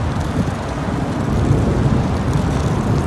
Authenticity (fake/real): real